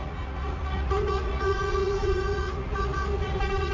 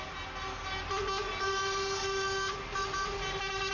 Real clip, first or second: second